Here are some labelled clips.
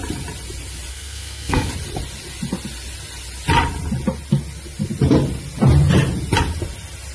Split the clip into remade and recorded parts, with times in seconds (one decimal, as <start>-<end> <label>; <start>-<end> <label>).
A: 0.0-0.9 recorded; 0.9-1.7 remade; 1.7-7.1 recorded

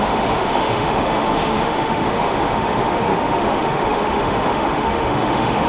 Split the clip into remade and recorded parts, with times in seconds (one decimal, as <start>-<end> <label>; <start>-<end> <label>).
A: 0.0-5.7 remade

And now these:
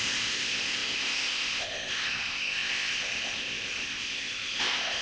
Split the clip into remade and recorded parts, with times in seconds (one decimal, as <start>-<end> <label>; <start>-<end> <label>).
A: 0.0-5.0 remade